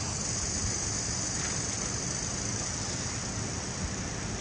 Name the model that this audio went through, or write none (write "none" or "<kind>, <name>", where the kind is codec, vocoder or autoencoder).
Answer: none